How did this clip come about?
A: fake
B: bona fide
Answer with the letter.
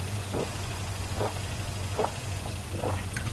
A